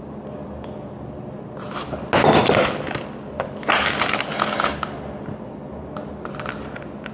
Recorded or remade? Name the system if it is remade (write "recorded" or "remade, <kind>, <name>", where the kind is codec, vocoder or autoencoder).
recorded